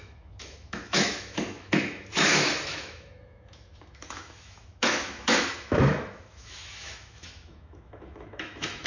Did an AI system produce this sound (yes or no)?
yes